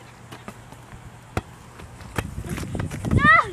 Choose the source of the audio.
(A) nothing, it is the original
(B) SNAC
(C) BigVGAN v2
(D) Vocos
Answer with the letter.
A